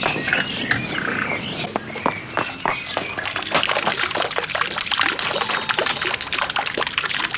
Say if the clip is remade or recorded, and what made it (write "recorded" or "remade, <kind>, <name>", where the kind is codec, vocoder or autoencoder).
recorded